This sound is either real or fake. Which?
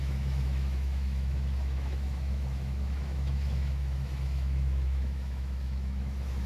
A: fake